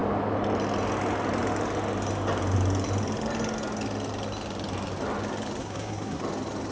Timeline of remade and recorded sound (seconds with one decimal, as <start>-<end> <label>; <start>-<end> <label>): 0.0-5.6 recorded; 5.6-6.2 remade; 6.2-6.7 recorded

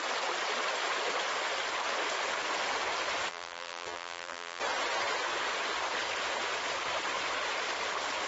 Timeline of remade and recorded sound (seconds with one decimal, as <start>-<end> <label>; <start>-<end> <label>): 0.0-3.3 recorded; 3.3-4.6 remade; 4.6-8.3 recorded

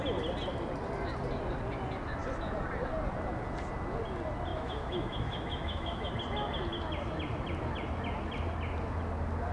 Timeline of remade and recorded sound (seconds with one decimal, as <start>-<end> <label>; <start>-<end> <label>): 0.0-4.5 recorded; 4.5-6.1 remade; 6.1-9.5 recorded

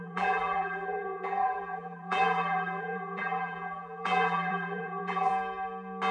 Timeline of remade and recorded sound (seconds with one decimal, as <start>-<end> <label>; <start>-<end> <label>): 0.0-5.3 remade; 5.3-6.1 recorded

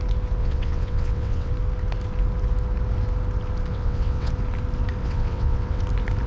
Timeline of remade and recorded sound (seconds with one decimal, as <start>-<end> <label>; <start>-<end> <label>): 0.0-0.4 recorded; 0.4-1.5 remade; 1.5-3.7 recorded; 3.7-4.3 remade; 4.3-5.0 recorded; 5.0-5.8 remade; 5.8-6.3 recorded

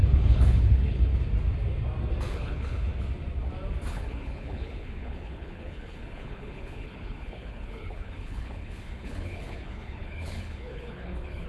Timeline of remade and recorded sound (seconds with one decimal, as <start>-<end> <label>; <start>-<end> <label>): 0.0-1.1 remade; 1.1-2.3 recorded; 2.3-2.9 remade; 2.9-3.9 recorded; 3.9-11.5 remade